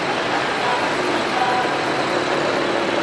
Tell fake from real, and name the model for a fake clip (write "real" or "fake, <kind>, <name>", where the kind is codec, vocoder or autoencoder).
real